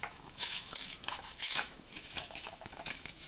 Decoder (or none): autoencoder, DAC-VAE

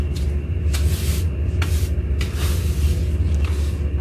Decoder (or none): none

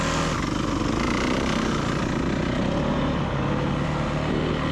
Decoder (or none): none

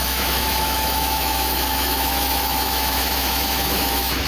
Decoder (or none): autoencoder, DAC-VAE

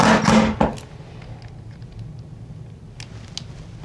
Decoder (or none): none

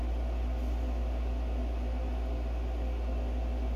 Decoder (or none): none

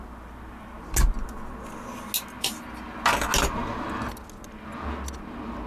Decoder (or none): none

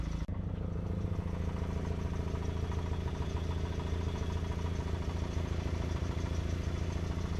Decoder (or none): none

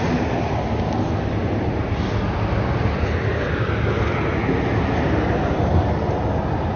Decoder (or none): none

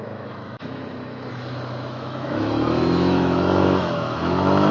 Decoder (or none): autoencoder, DAC-VAE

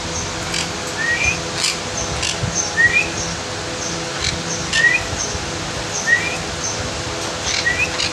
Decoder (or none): none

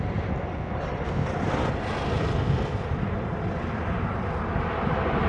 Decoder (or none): none